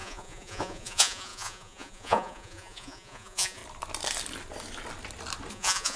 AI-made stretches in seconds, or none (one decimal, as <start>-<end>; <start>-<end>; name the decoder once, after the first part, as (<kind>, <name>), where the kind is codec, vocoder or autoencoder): 0.0-3.6 (vocoder, Vocos); 5.5-6.0